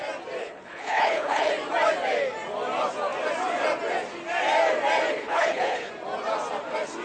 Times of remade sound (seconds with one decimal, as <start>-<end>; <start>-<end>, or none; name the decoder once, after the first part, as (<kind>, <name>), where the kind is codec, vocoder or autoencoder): 0.4-1.5 (codec, HILCodec); 5.1-5.9